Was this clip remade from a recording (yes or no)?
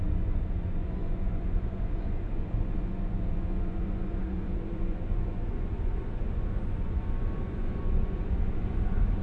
yes